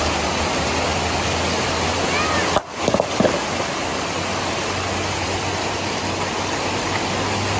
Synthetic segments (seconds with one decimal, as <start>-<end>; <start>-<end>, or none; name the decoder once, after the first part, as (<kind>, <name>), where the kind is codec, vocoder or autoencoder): none